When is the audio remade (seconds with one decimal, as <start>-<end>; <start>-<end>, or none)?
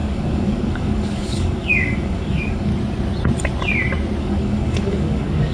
0.0-2.7; 4.2-5.5